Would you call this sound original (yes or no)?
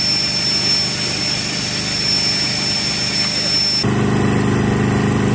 yes